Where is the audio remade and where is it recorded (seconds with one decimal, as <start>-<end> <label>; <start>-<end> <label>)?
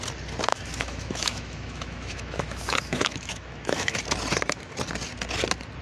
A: 0.0-0.5 recorded; 0.5-4.0 remade; 4.0-5.8 recorded